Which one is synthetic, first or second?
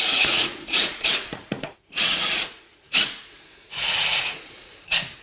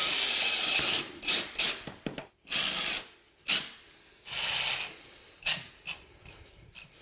first